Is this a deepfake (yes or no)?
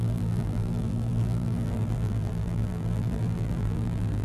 yes